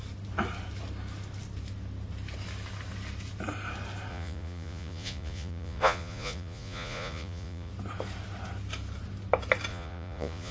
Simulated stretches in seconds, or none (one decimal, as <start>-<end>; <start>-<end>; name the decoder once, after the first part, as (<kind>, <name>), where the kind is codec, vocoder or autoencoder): 4.1-7.7 (vocoder, Vocos); 9.7-10.5